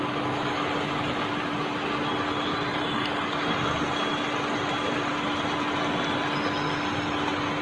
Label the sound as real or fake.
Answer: real